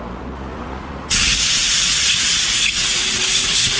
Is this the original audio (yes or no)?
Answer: no